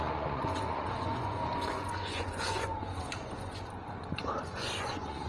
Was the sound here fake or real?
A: fake